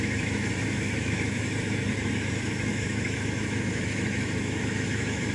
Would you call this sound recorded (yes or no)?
no